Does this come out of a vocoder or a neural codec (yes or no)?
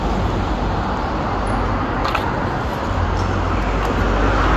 no